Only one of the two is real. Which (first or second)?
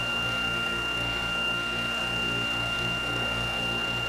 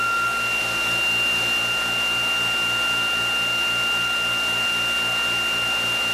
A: second